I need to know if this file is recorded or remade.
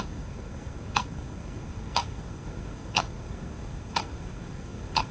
remade